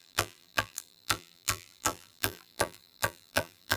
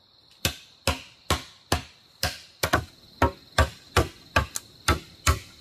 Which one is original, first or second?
second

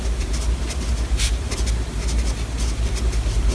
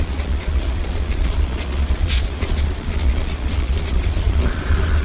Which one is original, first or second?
first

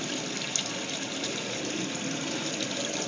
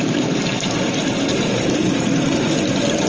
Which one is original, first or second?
first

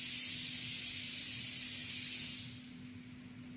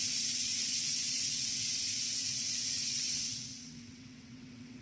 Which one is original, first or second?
first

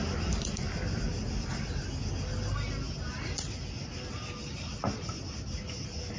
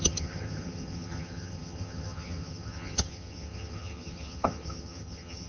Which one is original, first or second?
first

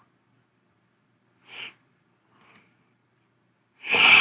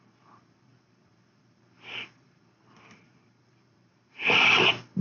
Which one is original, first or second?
first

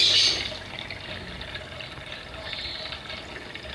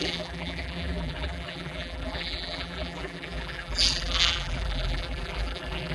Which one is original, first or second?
first